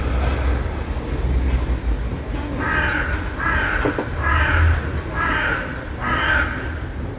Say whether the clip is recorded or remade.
recorded